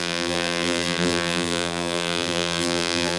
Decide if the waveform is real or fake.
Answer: fake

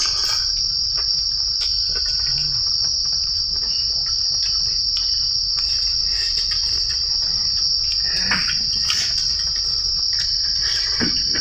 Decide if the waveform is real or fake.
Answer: real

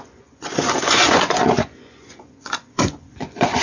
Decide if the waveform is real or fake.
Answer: fake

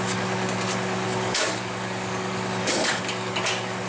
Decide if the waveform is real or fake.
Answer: fake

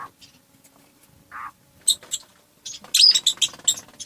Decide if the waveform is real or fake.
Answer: real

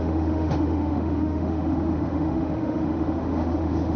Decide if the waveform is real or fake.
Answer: fake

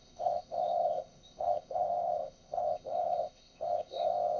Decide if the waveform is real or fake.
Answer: fake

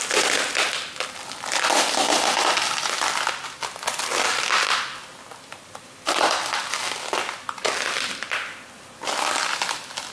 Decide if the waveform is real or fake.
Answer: real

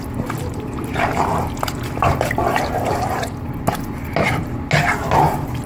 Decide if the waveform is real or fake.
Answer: real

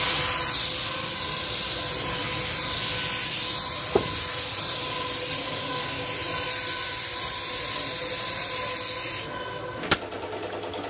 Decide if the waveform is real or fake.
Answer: real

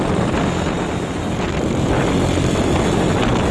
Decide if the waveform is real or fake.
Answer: real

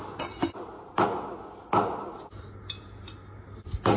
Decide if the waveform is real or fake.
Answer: real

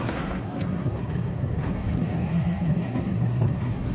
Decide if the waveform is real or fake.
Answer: fake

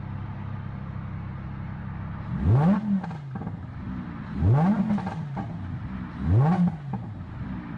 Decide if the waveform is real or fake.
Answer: real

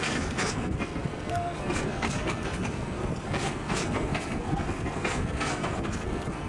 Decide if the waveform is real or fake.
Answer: fake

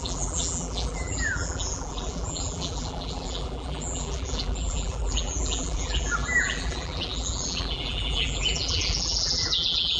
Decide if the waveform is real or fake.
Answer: fake